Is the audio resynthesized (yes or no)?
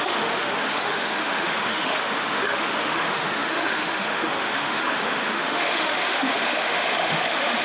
yes